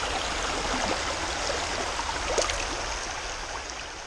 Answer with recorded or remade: recorded